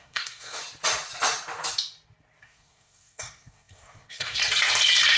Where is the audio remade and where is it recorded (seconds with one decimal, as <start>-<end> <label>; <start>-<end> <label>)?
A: 0.0-0.6 remade; 0.6-2.4 recorded; 2.4-4.4 remade; 4.4-5.2 recorded

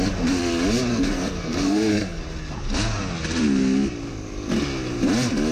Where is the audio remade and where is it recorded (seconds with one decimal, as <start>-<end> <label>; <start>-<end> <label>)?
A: 0.0-0.9 recorded; 0.9-2.2 remade; 2.2-5.5 recorded

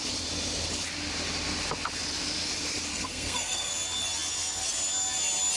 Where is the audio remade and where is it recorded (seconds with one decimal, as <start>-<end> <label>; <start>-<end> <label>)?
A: 0.0-2.9 recorded; 2.9-3.7 remade; 3.7-5.6 recorded

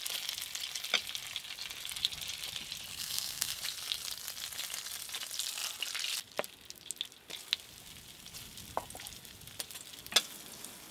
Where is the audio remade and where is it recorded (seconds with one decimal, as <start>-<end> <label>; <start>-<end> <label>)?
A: 0.0-2.9 recorded; 2.9-3.6 remade; 3.6-10.9 recorded

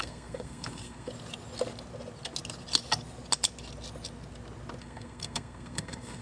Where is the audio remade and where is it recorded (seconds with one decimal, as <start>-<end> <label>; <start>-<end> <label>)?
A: 0.0-1.1 remade; 1.1-4.8 recorded; 4.8-6.2 remade